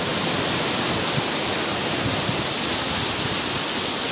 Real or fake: real